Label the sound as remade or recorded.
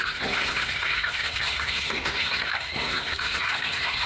remade